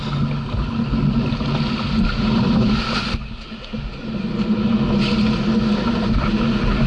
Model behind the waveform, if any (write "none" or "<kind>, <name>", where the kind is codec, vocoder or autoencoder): none